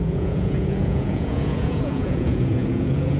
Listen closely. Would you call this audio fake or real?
fake